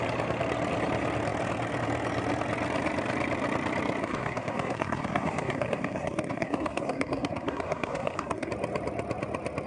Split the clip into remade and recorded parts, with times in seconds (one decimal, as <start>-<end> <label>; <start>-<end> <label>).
0.0-4.0 recorded; 4.0-8.5 remade; 8.5-9.7 recorded